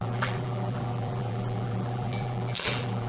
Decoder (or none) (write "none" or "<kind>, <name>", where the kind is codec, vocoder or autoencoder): vocoder, BigVGAN v2